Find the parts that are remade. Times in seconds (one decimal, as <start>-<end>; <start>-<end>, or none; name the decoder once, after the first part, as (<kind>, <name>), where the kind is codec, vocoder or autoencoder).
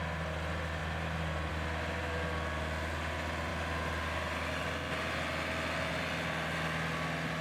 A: none